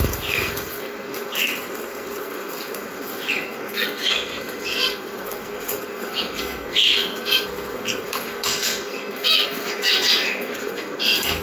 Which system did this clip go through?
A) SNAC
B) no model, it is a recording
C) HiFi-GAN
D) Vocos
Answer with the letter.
A